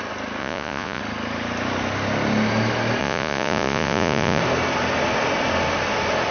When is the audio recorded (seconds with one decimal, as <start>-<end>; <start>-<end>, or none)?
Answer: 0.0-0.4; 1.0-3.0; 4.4-6.3